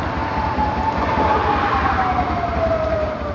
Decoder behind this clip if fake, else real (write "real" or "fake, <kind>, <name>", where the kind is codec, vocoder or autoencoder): real